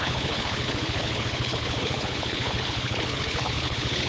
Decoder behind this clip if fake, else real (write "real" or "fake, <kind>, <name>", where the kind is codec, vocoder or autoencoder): fake, codec, HILCodec